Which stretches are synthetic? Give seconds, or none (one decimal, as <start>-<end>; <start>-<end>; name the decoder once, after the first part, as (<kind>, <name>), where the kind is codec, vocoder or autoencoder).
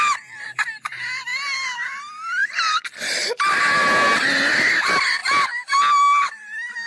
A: 2.4-3.6 (vocoder, BigVGAN v2)